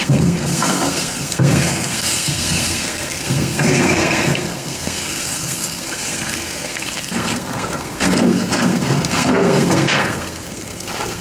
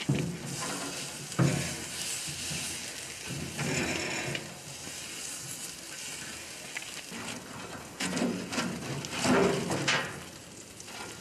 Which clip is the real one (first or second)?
second